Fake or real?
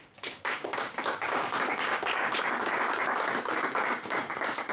fake